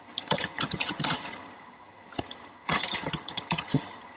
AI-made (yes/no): yes